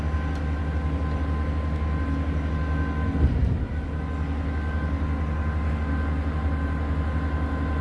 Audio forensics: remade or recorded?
recorded